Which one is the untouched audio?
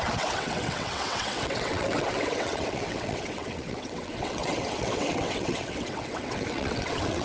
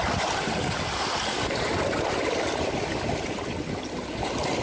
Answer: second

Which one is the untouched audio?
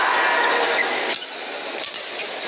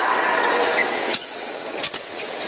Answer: first